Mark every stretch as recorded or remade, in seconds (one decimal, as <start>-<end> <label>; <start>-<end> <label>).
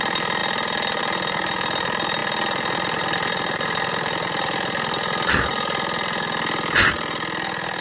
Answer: 0.0-7.8 recorded